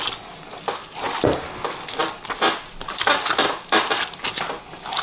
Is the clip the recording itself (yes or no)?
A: yes